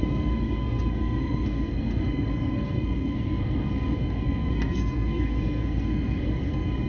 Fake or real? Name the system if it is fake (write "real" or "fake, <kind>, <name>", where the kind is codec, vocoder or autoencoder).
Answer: fake, codec, SNAC